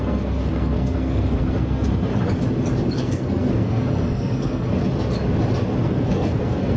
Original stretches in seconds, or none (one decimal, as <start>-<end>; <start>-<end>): 2.1-2.9; 4.7-5.8

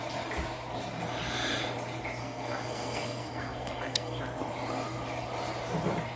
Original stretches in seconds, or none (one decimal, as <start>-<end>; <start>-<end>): 0.0-2.2; 4.2-6.2

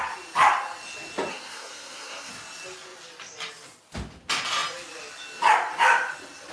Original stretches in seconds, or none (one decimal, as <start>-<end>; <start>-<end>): 0.0-1.3; 2.3-6.5

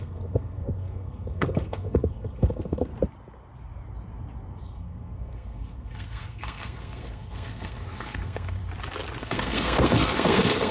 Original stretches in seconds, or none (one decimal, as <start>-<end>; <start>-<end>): 2.9-4.6; 8.6-9.2

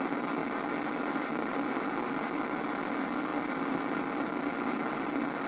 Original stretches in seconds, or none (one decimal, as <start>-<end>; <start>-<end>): 0.0-5.5

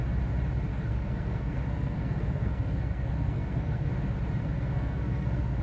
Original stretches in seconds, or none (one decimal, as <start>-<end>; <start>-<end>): 0.0-0.7; 3.9-4.4

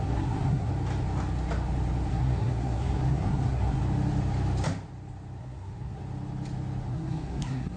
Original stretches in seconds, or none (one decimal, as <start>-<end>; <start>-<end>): 0.7-2.1; 3.8-5.4; 6.0-6.9